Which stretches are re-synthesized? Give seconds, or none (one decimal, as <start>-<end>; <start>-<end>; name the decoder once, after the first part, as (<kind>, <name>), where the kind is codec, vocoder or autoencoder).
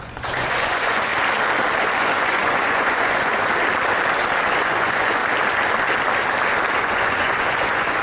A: 0.0-1.1 (vocoder, Vocos); 1.8-3.5; 4.6-5.2; 6.8-8.0